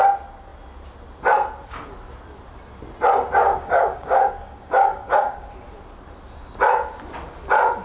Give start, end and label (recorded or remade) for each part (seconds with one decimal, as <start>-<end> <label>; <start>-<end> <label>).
0.0-3.4 recorded; 3.4-5.5 remade; 5.5-7.8 recorded